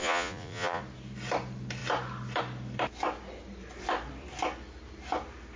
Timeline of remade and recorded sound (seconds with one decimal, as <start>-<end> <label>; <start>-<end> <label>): 0.0-0.8 remade; 0.8-5.6 recorded